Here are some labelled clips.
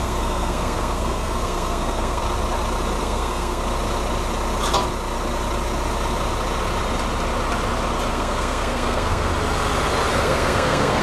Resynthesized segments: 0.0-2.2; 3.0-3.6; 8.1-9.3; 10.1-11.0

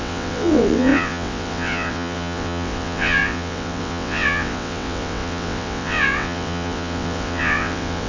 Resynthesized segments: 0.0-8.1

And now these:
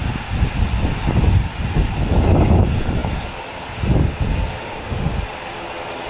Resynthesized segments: 4.6-5.2